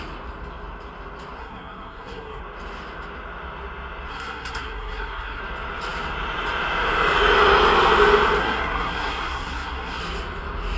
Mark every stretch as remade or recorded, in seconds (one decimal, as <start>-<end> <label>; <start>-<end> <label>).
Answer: 0.0-1.4 recorded; 1.4-2.4 remade; 2.4-4.1 recorded; 4.1-5.4 remade; 5.4-8.4 recorded; 8.4-10.0 remade; 10.0-10.8 recorded